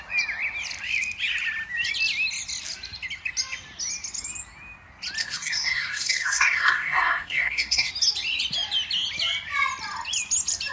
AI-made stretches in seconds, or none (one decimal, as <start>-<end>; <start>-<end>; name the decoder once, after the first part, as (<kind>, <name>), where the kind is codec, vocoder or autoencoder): 5.2-7.9 (codec, SNAC)